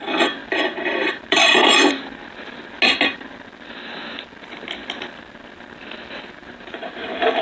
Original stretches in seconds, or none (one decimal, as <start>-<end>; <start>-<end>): 0.0-0.4; 1.8-6.4